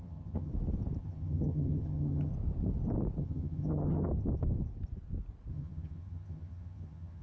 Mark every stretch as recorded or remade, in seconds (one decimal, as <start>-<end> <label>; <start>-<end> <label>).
0.0-0.5 remade; 0.5-1.0 recorded; 1.0-2.3 remade; 2.3-3.2 recorded; 3.2-4.1 remade; 4.1-5.5 recorded; 5.5-7.2 remade